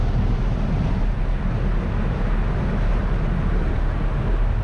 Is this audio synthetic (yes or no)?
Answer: no